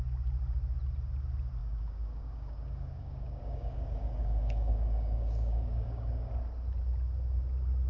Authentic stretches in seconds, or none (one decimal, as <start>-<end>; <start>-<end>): 0.0-1.6; 6.3-7.9